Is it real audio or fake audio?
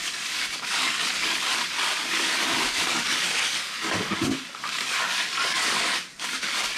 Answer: fake